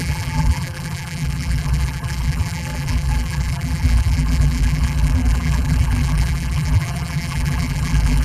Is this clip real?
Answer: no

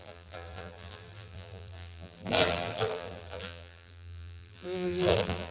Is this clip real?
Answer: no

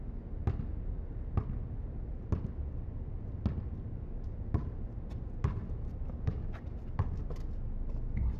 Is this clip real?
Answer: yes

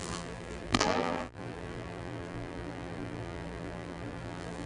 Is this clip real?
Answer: no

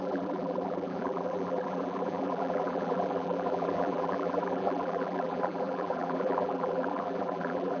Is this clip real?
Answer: no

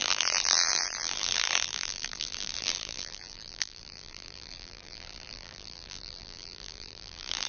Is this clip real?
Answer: no